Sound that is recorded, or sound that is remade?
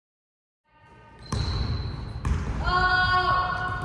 recorded